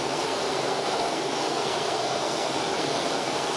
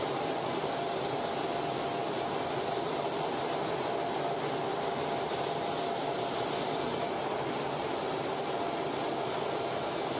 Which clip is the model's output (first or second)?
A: first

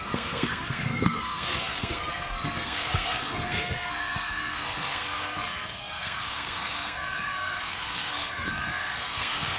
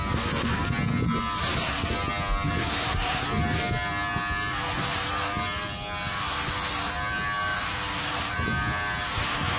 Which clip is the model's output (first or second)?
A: first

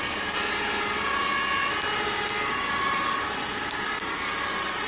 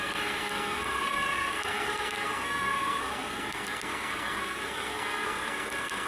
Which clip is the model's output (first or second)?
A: second